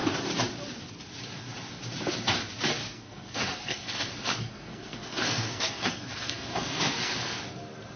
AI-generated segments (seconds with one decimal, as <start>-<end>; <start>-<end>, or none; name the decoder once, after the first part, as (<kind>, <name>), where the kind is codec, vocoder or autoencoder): 2.8-7.4 (codec, SNAC)